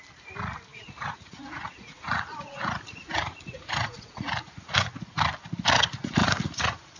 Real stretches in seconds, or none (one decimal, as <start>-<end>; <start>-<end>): 0.0-0.7; 4.9-6.2